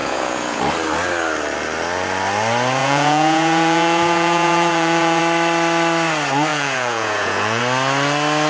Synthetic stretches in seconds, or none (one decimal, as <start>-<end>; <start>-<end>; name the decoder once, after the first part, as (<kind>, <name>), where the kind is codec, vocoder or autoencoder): 0.0-0.6 (vocoder, Vocos); 2.8-5.2; 6.5-7.6